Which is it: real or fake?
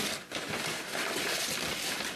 real